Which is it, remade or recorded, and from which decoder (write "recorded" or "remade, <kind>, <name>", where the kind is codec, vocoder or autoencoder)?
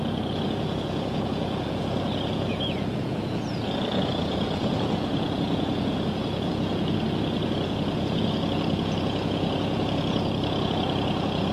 remade, vocoder, Vocos